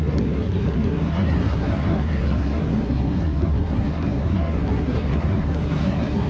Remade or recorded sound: remade